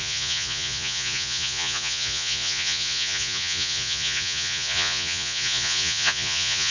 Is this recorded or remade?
remade